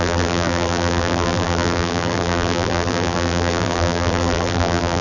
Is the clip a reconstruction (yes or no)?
yes